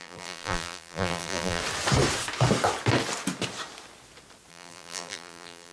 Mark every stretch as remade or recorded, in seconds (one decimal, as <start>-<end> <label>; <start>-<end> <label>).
0.0-1.6 remade; 1.6-4.5 recorded; 4.5-5.7 remade